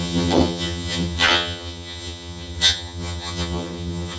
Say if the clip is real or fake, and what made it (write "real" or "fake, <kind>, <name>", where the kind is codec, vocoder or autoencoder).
fake, vocoder, HiFi-GAN